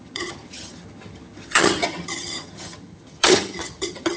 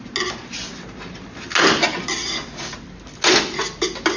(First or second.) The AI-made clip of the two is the first